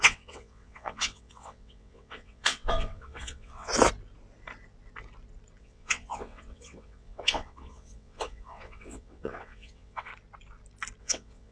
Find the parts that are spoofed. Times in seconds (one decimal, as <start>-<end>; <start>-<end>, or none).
0.0-3.7; 5.6-10.1; 11.0-11.5